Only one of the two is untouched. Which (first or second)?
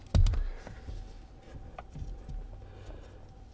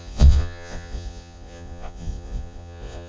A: first